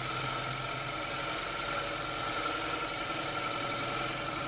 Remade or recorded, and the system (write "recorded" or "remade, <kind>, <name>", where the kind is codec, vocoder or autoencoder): recorded